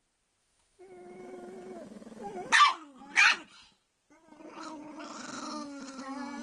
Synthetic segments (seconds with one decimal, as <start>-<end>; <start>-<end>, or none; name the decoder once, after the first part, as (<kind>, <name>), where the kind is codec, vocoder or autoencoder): 0.4-2.3 (autoencoder, DAC-VAE)